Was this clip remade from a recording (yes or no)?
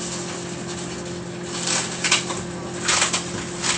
no